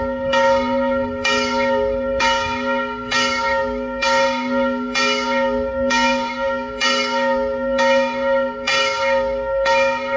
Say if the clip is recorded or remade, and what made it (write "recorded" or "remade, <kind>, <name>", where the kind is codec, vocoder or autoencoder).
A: remade, codec, DAC